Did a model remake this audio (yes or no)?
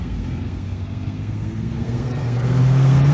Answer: yes